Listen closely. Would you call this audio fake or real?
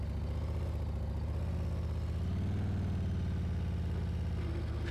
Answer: real